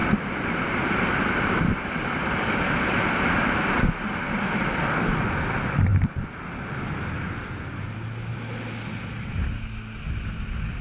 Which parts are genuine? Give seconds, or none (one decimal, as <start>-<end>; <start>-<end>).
4.7-5.9; 6.4-10.8